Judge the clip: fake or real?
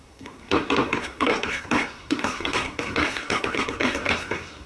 fake